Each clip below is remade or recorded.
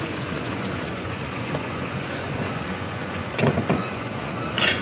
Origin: remade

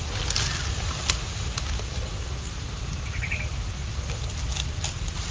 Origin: recorded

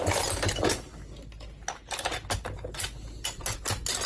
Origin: recorded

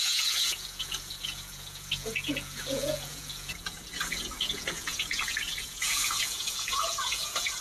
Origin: remade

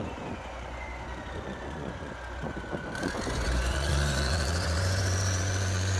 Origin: remade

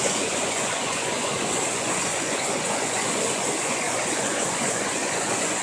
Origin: remade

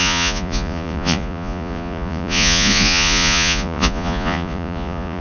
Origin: remade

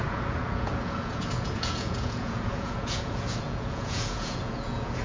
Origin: remade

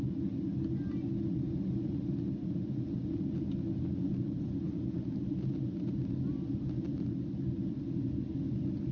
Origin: recorded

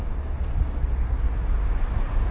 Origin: recorded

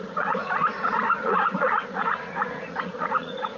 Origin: remade